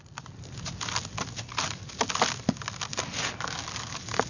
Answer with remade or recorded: recorded